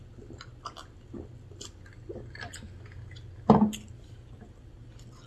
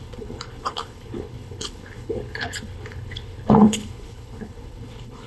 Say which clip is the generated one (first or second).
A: second